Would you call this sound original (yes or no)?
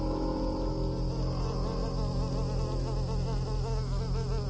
yes